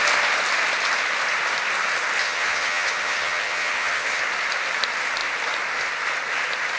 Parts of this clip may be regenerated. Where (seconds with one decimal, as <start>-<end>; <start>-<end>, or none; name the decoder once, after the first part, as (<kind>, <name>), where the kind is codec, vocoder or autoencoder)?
2.2-4.2 (vocoder, HiFi-GAN)